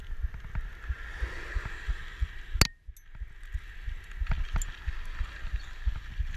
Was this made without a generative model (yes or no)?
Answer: yes